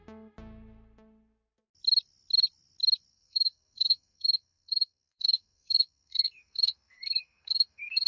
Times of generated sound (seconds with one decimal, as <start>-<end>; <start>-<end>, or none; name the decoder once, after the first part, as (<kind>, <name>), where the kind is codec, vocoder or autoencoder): 3.1-8.1 (codec, SNAC)

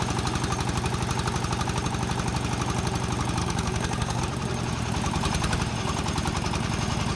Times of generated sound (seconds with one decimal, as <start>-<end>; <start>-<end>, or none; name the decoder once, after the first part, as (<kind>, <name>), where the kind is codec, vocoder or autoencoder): 3.4-4.2 (codec, SNAC)

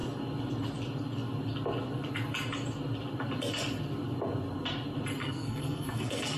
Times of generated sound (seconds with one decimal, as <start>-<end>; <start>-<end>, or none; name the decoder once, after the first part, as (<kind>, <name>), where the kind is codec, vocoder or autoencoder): 5.2-6.4 (codec, SNAC)

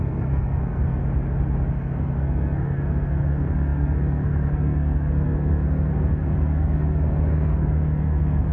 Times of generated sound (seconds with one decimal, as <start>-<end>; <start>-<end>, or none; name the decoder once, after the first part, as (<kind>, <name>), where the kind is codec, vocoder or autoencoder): 0.0-1.0 (codec, SNAC); 1.7-8.5

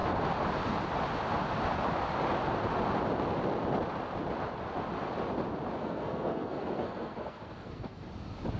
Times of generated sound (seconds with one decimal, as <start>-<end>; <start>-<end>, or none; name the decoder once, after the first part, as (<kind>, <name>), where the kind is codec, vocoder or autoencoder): 5.8-8.0 (codec, SNAC)

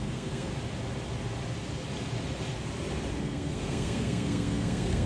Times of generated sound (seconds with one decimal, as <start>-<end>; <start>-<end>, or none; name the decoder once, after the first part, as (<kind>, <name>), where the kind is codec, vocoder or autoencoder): 0.0-0.5 (codec, SNAC); 3.2-5.1